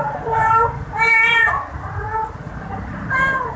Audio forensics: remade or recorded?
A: remade